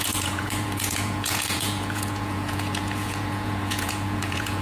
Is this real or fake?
fake